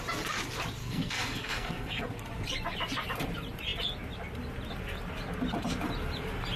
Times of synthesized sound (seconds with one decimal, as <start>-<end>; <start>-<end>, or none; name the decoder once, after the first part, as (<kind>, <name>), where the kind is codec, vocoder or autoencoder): 0.8-2.0 (codec, SNAC)